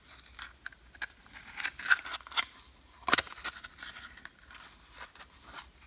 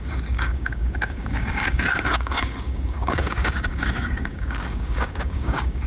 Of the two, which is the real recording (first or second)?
first